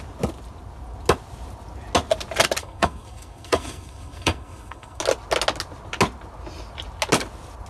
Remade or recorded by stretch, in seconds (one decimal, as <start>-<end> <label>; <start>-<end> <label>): 0.0-2.6 recorded; 2.6-5.0 remade; 5.0-7.7 recorded